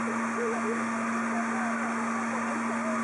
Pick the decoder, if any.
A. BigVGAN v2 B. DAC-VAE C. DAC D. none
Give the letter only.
D